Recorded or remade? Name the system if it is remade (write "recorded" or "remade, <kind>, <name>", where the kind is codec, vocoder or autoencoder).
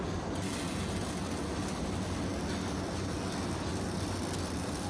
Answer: recorded